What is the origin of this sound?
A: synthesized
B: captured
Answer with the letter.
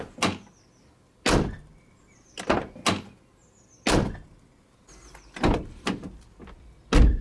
B